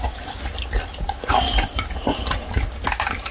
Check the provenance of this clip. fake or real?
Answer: real